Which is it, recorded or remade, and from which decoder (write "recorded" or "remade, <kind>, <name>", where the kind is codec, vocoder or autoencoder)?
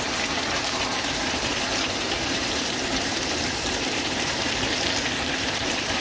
remade, vocoder, BigVGAN v2